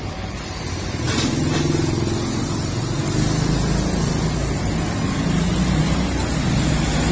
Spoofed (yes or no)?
no